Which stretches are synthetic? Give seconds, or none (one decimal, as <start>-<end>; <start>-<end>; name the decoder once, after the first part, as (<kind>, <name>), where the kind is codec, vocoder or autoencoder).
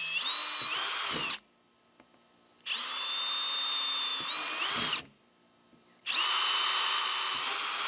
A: none